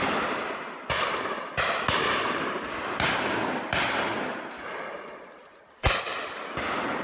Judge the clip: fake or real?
real